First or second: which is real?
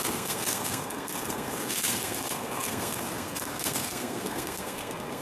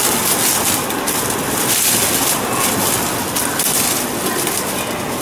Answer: second